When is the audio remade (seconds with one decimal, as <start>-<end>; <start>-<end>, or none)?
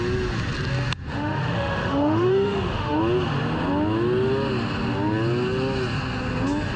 1.1-3.0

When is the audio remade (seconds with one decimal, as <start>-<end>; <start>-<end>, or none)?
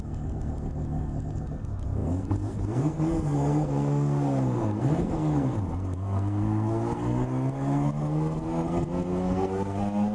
0.0-10.1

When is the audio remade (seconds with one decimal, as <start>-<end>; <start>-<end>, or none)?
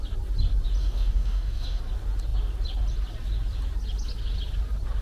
0.8-1.8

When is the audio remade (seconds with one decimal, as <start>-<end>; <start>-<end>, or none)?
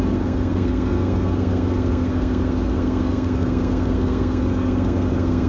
0.0-5.5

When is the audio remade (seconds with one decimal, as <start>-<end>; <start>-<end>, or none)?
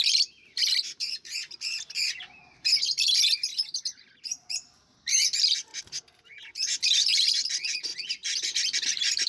0.0-9.3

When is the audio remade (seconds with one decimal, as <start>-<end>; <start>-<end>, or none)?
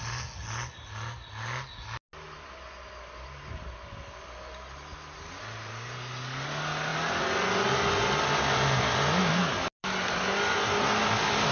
none